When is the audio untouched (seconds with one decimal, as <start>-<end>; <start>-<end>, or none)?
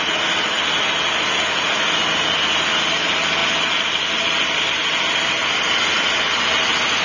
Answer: 0.0-7.0